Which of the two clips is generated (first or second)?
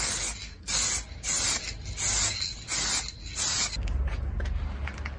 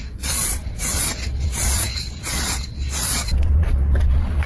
second